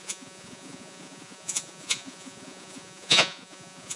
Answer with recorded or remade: remade